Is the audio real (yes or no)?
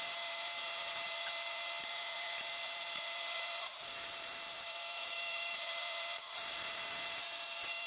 no